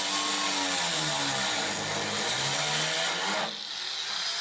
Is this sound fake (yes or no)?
no